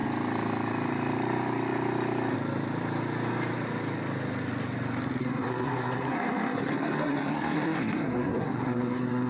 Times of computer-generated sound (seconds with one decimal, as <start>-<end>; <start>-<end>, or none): 5.2-9.3